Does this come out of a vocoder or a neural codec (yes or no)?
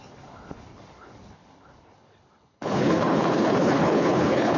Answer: yes